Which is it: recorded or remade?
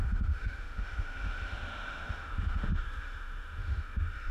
remade